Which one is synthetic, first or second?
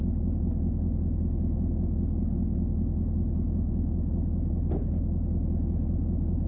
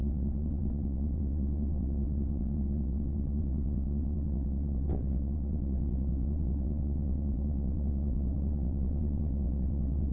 second